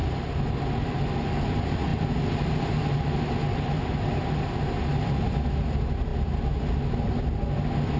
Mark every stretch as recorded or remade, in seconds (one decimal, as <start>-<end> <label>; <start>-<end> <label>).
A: 0.0-8.0 recorded